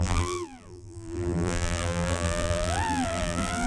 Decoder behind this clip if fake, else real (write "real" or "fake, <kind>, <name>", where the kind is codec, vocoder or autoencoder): fake, vocoder, BigVGAN v2